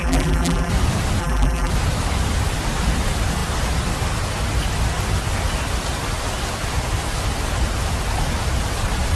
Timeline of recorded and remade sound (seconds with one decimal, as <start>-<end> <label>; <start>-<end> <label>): 0.0-0.7 remade; 0.7-1.2 recorded; 1.2-1.7 remade; 1.7-9.2 recorded